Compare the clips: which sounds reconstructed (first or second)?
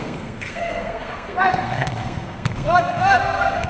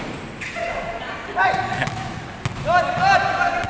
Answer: first